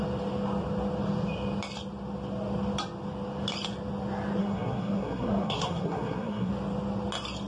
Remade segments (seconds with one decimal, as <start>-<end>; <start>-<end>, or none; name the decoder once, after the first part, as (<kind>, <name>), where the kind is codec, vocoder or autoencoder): 4.4-6.5 (codec, SNAC)